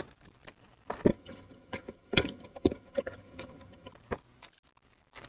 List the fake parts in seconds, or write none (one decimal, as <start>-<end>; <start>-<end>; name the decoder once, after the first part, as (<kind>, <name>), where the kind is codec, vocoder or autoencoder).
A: 1.1-3.9 (vocoder, HiFi-GAN)